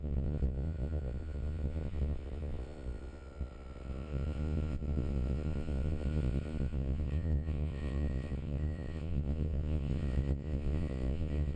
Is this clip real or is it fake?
fake